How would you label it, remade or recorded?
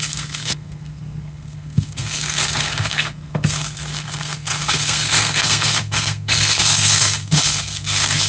remade